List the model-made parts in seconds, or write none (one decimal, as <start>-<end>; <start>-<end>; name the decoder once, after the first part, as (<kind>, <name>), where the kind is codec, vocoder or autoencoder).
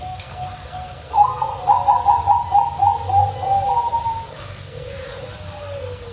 0.0-1.5 (codec, SNAC); 4.3-5.0; 5.6-6.1